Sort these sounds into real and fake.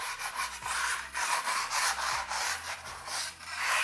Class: real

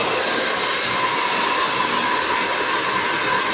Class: real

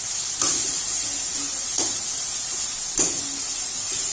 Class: real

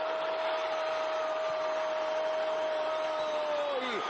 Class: real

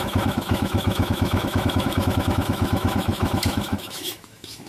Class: fake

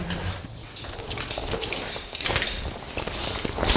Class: real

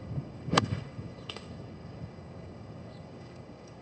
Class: fake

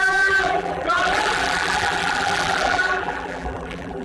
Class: fake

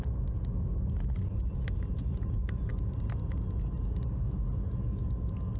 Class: real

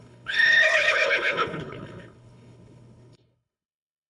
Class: fake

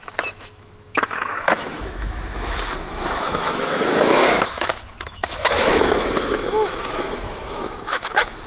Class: fake